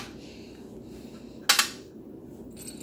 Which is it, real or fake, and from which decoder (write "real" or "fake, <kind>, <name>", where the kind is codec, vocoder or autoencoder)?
real